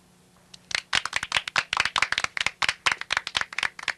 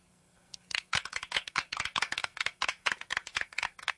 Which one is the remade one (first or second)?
second